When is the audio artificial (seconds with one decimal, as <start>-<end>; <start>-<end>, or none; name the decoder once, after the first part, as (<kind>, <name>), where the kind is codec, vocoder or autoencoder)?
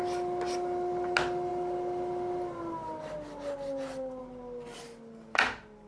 none